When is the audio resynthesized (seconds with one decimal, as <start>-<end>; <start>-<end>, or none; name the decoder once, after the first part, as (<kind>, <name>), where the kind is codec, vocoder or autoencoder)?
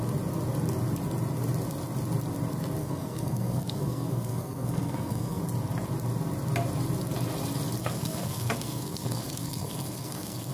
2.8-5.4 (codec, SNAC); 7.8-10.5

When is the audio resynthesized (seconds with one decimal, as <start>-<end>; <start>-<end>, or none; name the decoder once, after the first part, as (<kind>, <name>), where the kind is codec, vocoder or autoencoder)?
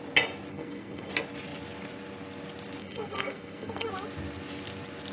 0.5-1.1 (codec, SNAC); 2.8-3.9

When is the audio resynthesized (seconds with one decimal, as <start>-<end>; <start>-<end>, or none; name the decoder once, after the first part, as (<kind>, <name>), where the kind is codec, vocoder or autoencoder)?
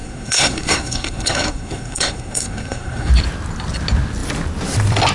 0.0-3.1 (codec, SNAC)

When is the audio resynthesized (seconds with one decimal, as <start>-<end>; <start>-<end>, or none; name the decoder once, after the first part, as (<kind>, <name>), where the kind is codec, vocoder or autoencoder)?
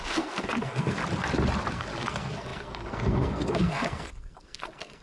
0.0-1.0 (codec, SNAC); 1.7-5.0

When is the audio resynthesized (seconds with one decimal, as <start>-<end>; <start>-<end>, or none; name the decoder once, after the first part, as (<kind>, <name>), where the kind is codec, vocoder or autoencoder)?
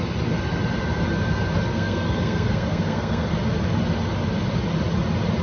1.7-3.3 (codec, SNAC)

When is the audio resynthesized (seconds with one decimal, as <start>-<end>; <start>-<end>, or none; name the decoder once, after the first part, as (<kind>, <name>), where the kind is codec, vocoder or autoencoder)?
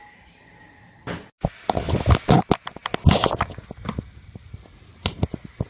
none